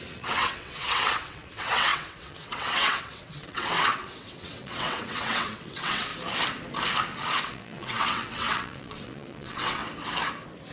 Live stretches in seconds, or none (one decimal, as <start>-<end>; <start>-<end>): 6.1-7.4; 9.8-10.7